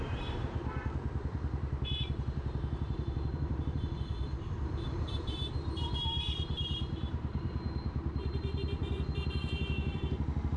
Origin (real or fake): fake